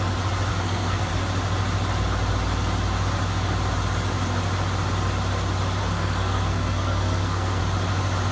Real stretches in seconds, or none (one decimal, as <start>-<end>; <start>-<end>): 0.0-0.5; 1.1-5.8; 7.6-8.3

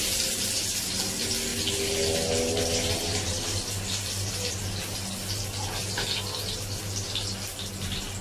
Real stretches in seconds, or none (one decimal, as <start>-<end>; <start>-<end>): 0.0-8.2

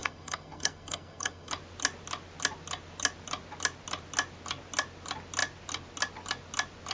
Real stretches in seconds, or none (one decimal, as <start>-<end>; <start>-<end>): 1.5-6.9

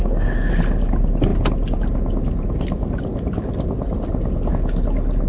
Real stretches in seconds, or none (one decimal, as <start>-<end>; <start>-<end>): 0.5-5.3

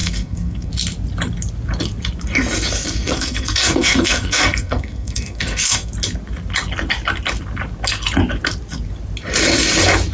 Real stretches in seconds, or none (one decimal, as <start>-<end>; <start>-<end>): 0.7-3.0; 5.9-10.1